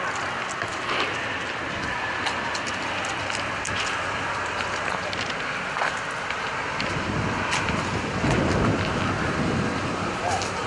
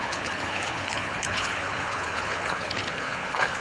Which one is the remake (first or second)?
second